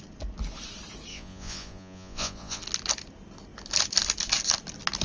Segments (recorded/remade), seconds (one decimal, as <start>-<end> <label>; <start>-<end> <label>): 0.0-1.1 recorded; 1.1-2.6 remade; 2.6-5.0 recorded